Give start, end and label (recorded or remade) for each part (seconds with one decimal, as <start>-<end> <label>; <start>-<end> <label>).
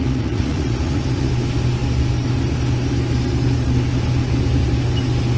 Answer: 0.0-1.3 remade; 1.3-5.4 recorded